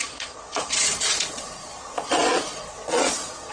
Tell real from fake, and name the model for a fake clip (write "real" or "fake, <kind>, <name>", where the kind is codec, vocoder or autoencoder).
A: fake, vocoder, Vocos